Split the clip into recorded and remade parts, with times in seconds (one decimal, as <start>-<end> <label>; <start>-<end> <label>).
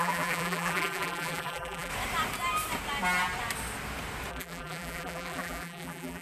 0.0-1.9 remade; 1.9-4.3 recorded; 4.3-6.2 remade